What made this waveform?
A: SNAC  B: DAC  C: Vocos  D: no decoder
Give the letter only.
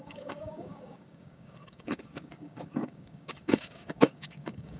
B